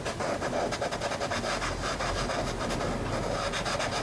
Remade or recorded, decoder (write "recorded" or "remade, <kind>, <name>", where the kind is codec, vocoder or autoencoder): recorded